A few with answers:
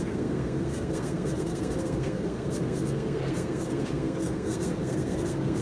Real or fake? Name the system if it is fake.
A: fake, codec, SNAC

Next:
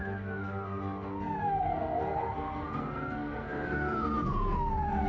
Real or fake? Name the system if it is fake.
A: fake, codec, SNAC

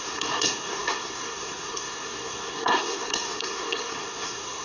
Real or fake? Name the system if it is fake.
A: fake, codec, SNAC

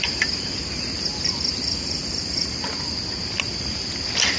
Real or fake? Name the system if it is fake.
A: real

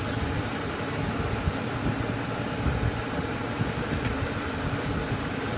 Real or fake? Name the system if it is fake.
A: real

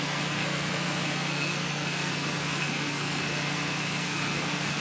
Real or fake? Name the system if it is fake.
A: fake, codec, SNAC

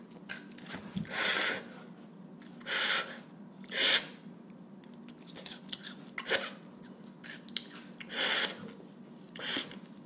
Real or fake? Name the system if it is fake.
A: real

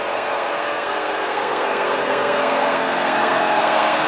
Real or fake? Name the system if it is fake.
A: fake, codec, SNAC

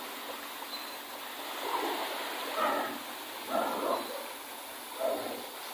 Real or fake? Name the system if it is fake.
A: real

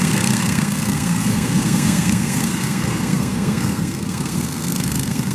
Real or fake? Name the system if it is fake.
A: fake, codec, SNAC